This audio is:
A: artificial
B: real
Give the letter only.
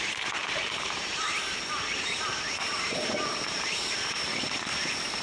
A